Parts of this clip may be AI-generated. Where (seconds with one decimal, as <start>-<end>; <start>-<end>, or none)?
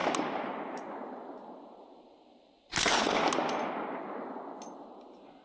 none